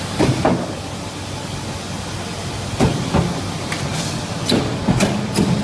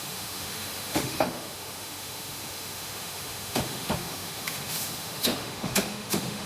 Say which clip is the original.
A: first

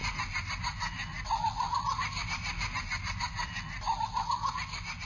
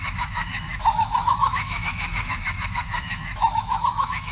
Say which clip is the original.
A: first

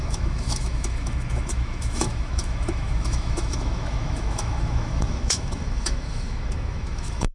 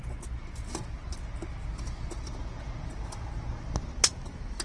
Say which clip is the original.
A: second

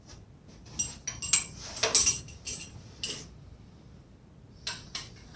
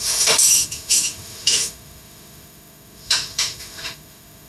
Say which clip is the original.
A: first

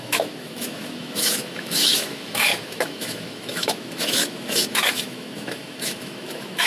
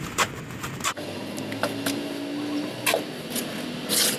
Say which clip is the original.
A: second